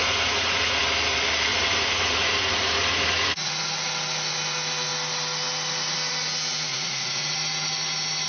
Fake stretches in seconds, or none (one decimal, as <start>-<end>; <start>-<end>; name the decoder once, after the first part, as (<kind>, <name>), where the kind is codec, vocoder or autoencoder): 0.0-0.8 (vocoder, Vocos); 1.5-3.6; 6.7-7.3